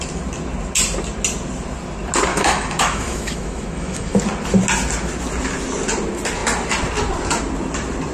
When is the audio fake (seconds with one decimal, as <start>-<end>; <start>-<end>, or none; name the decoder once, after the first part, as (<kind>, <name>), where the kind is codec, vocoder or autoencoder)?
2.3-4.2 (autoencoder, DAC-VAE)